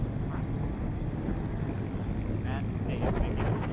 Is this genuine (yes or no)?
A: yes